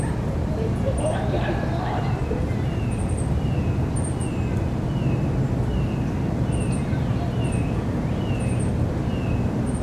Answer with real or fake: real